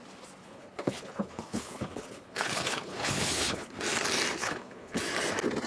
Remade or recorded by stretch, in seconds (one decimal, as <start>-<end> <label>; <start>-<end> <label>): 0.0-0.4 recorded; 0.4-3.8 remade; 3.8-4.4 recorded; 4.4-5.0 remade; 5.0-5.7 recorded